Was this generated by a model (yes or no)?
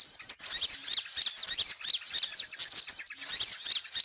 no